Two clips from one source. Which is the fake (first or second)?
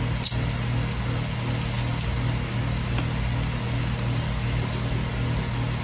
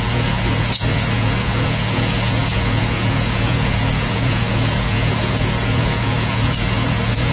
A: second